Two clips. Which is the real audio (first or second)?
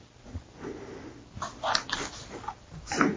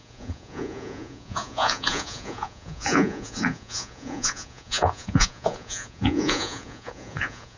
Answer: first